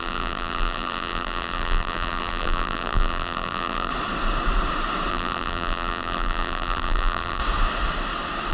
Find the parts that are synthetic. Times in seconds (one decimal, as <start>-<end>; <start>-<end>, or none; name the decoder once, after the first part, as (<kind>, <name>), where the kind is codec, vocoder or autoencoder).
0.0-3.9 (vocoder, BigVGAN v2); 5.1-7.4